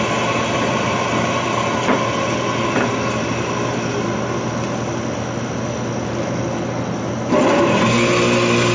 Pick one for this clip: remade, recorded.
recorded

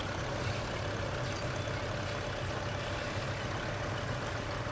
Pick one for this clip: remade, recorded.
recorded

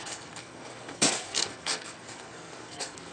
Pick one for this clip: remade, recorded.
remade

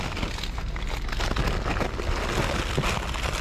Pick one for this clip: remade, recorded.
recorded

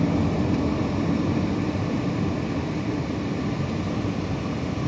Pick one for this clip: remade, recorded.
remade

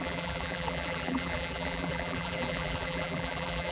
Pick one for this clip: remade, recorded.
remade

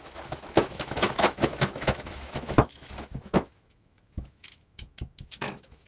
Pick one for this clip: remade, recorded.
remade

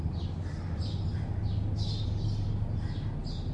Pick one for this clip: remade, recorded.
recorded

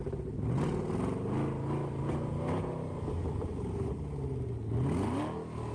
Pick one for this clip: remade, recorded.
recorded